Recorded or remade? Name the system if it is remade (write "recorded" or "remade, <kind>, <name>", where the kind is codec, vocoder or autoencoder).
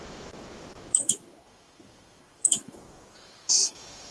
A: remade, autoencoder, DAC-VAE